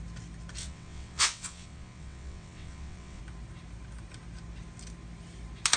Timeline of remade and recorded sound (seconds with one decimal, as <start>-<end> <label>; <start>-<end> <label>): 0.0-0.6 recorded; 0.6-3.2 remade; 3.2-5.8 recorded